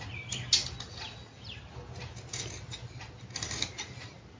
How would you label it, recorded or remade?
recorded